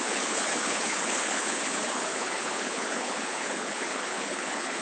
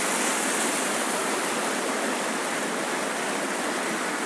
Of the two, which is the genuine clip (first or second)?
second